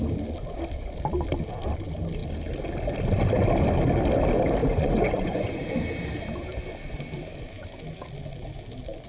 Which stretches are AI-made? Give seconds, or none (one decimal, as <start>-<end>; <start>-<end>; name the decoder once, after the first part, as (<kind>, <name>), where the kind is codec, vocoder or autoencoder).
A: 4.6-5.6 (vocoder, Vocos)